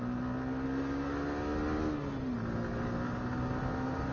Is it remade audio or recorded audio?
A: recorded